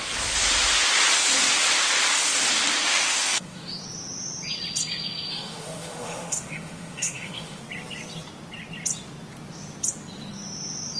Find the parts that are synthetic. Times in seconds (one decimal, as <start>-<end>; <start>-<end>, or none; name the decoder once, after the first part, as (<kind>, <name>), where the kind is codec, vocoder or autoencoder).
2.8-3.7 (autoencoder, DAC-VAE); 5.3-7.6